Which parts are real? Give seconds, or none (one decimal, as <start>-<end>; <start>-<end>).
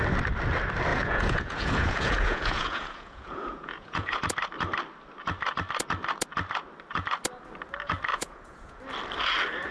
0.0-0.9; 4.2-8.1; 8.8-9.7